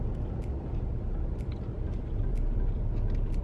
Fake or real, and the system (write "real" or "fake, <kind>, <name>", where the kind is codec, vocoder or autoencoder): fake, vocoder, BigVGAN v2